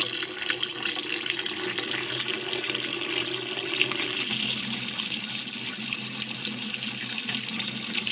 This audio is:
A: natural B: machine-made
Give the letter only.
A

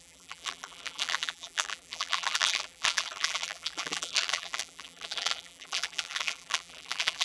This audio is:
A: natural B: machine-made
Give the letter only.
B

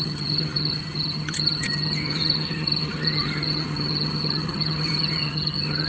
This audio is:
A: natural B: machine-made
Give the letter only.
B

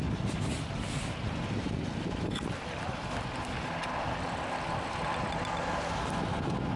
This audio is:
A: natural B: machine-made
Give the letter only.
A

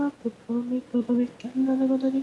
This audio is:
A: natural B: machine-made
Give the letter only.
A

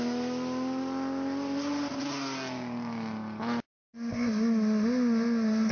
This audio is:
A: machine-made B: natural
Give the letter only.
B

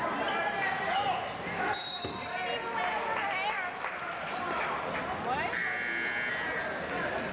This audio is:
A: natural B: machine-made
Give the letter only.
A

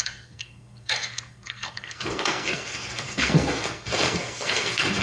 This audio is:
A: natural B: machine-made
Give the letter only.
B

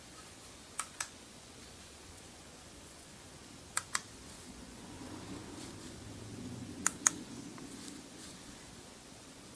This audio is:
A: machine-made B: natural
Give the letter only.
A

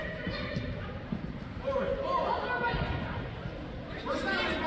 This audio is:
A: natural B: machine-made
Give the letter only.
A